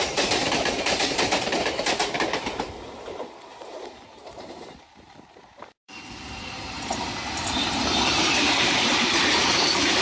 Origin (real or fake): fake